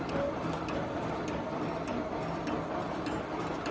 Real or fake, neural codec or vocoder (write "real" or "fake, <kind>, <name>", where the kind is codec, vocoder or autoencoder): real